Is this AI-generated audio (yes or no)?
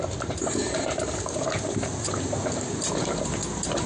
yes